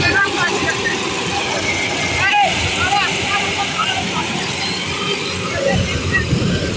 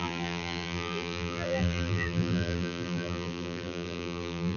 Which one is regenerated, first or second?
second